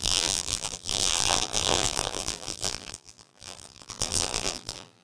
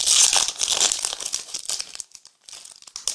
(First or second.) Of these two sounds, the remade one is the first